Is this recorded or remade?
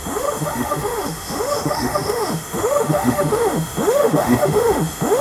remade